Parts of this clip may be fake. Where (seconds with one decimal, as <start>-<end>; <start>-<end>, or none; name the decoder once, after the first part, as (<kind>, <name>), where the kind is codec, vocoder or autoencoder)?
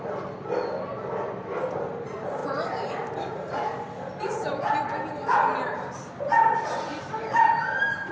6.9-7.6 (vocoder, BigVGAN v2)